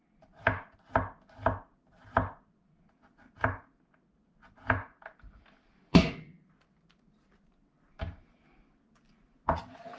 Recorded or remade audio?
recorded